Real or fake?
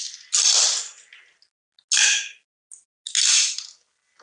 real